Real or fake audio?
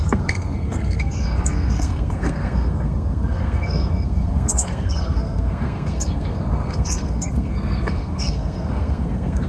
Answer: fake